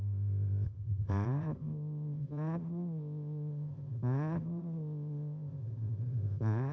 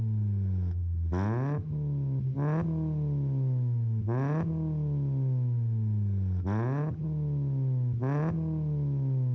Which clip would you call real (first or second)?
second